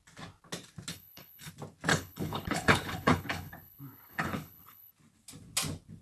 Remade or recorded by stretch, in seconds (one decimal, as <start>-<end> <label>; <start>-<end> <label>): 0.0-0.9 recorded; 0.9-1.5 remade; 1.5-1.9 recorded; 1.9-4.9 remade; 4.9-6.0 recorded